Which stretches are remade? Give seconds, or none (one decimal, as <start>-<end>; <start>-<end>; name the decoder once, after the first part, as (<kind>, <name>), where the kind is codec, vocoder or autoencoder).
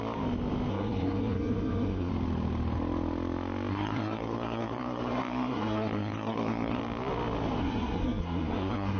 0.7-2.1 (codec, SNAC); 3.7-6.8; 7.6-9.0